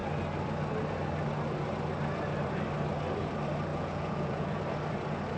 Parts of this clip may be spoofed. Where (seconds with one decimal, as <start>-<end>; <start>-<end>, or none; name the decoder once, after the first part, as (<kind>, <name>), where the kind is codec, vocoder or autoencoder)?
3.7-4.6 (vocoder, Vocos)